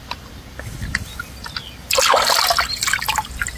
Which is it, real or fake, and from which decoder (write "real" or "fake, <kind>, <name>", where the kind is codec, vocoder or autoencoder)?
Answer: real